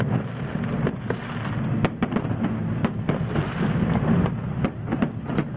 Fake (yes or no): no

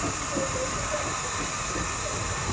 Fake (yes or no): no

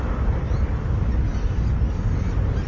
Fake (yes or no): no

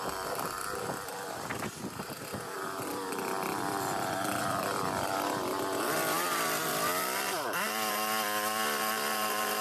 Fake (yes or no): yes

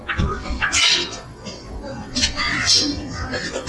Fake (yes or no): yes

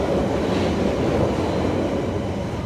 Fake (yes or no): no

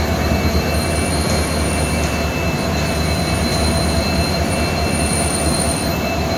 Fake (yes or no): no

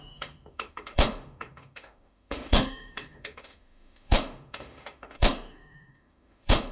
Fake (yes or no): yes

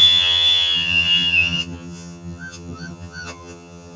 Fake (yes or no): yes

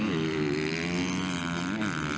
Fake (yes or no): no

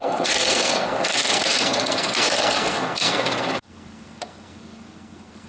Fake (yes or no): yes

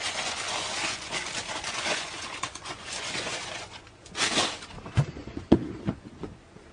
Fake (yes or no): yes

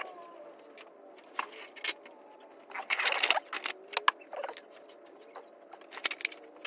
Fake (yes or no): no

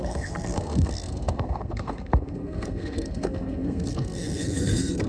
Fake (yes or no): yes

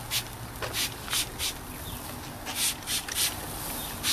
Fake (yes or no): no